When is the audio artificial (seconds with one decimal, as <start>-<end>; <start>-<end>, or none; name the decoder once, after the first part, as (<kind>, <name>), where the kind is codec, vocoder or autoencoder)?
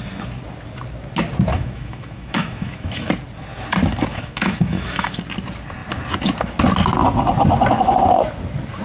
1.5-3.1 (autoencoder, DAC-VAE); 4.1-5.2